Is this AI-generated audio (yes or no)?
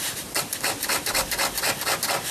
no